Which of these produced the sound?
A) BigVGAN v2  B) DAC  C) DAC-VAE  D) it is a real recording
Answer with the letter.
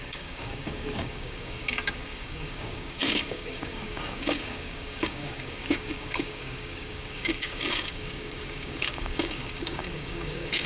B